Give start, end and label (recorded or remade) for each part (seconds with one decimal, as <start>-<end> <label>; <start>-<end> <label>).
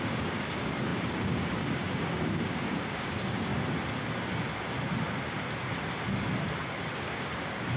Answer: 0.0-3.5 remade; 3.5-6.9 recorded; 6.9-7.8 remade